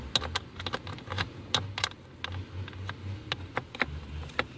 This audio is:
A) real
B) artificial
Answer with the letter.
A